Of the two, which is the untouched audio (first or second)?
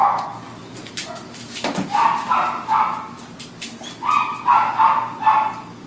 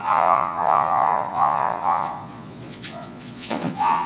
first